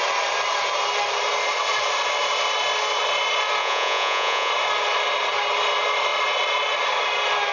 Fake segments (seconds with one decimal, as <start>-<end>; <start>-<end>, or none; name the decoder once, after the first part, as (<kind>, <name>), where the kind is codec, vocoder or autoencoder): 3.6-4.5 (vocoder, Vocos)